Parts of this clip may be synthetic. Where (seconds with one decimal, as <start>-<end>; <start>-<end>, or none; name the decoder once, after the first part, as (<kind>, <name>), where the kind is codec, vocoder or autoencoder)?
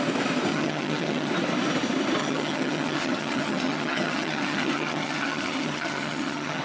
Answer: 0.5-1.3 (vocoder, HiFi-GAN); 2.2-6.6